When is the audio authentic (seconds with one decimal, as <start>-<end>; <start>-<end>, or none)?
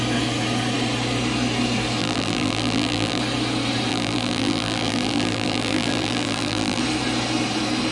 0.0-2.0; 3.2-3.9; 6.8-7.9